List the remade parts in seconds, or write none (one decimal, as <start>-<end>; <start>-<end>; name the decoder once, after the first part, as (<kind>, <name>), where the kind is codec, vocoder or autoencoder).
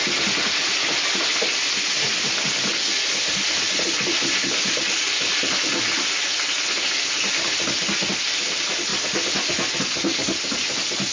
none